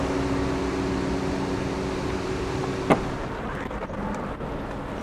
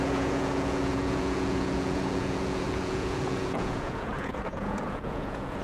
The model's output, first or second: second